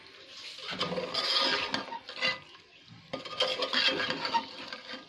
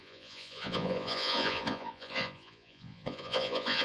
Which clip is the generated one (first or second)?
second